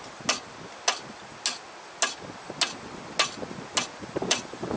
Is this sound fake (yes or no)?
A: no